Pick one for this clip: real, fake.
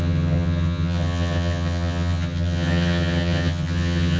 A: fake